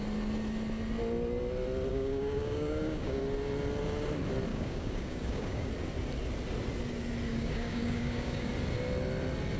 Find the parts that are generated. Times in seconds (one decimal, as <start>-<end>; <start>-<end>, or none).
1.9-3.2; 4.5-5.7; 7.3-8.5